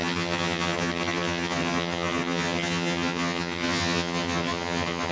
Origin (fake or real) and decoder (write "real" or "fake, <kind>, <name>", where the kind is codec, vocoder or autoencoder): fake, vocoder, HiFi-GAN